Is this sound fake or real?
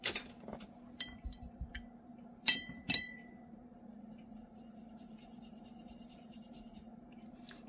fake